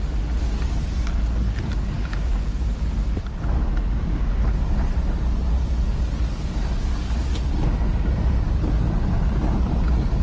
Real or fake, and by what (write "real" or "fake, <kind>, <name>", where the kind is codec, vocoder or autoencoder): real